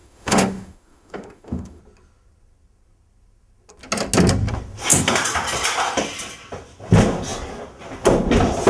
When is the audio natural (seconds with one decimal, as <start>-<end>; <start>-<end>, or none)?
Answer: 1.8-8.7